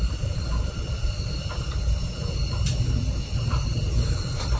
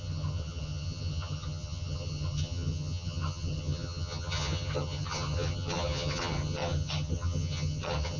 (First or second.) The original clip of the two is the first